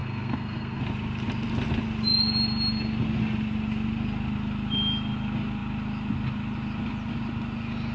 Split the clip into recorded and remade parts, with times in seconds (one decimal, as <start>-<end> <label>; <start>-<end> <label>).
0.0-0.8 remade; 0.8-7.9 recorded